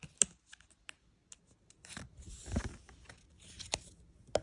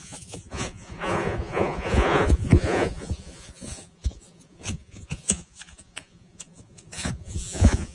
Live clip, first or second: first